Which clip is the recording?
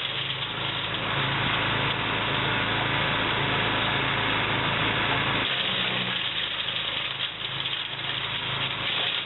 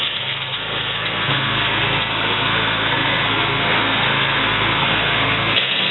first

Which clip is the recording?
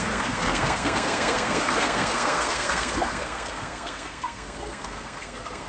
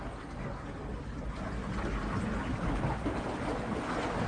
second